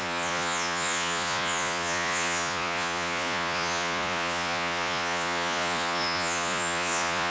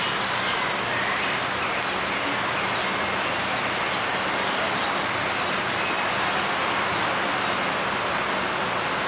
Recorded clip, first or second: second